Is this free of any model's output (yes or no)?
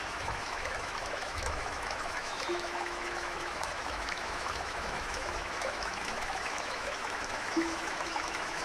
no